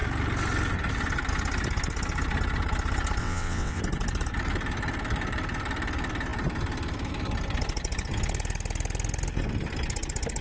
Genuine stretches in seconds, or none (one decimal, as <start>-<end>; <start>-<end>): 0.0-3.2; 3.8-10.4